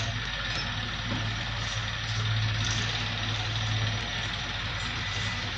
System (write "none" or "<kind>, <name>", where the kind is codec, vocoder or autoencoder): none